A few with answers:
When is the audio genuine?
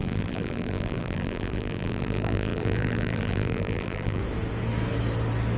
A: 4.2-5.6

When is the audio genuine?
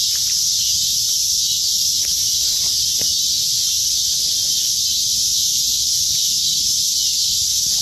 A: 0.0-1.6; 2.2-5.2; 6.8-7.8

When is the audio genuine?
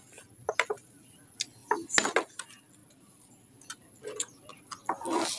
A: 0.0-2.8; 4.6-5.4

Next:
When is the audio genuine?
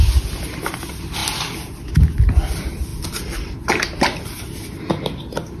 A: 0.0-5.6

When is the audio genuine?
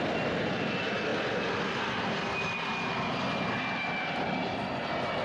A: 0.0-5.2